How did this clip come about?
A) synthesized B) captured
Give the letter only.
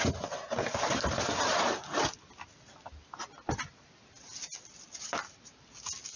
B